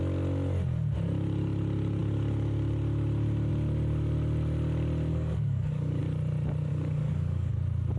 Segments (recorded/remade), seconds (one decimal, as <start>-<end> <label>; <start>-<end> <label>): 0.0-5.1 recorded; 5.1-6.0 remade; 6.0-6.7 recorded; 6.7-7.5 remade; 7.5-8.0 recorded